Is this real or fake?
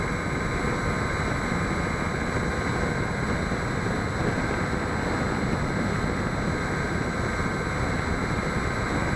real